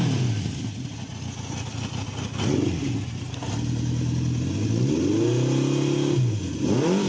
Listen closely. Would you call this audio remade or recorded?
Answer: recorded